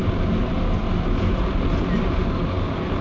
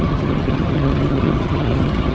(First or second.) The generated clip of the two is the second